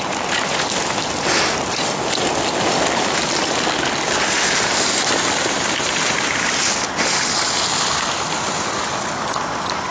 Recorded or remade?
recorded